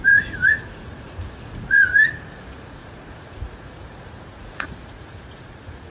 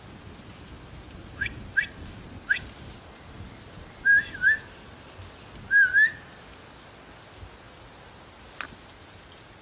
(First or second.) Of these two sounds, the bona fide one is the second